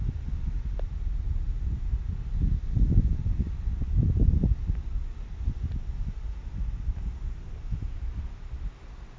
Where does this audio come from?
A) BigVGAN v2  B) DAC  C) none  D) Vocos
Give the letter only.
C